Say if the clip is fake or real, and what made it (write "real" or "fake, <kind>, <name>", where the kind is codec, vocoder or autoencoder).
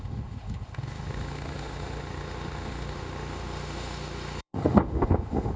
fake, autoencoder, DAC-VAE